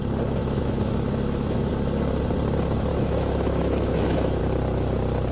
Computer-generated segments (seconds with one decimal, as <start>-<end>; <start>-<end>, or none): 0.4-1.7; 2.9-4.4